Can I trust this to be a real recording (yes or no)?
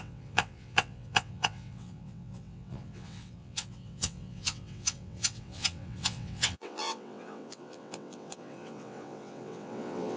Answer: no